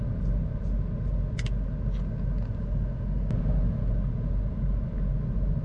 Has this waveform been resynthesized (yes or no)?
no